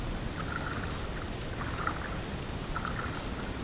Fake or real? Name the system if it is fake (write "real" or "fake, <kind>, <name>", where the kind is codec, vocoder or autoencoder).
real